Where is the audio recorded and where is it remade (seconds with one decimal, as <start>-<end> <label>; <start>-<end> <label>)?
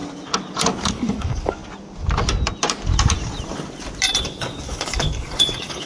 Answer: 0.0-0.9 recorded; 0.9-1.6 remade; 1.6-4.2 recorded; 4.2-5.9 remade